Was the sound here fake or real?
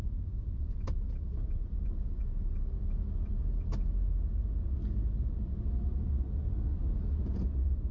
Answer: real